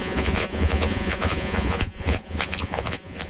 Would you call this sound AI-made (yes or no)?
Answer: yes